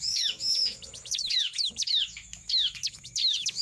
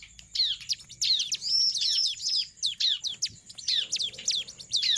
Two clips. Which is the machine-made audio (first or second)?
first